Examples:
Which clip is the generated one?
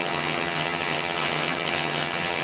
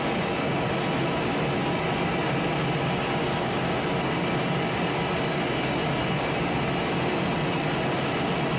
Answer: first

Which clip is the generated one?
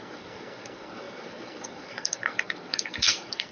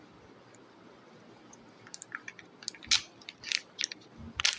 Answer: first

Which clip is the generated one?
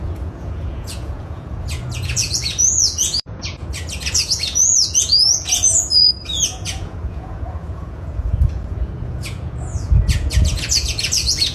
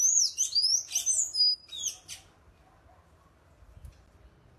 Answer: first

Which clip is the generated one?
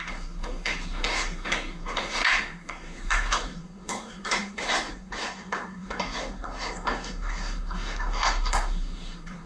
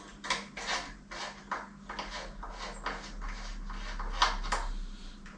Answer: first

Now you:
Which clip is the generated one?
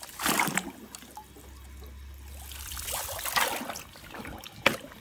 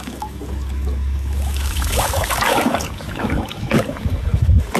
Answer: second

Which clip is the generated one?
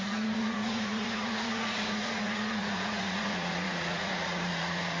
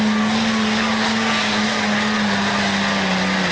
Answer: first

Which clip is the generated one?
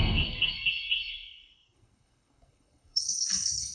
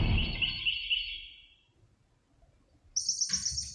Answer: first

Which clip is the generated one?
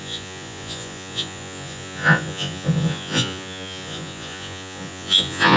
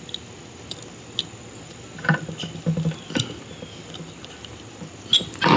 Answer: first